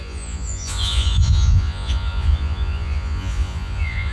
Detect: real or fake fake